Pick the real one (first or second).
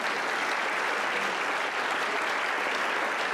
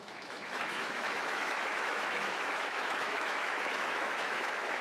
first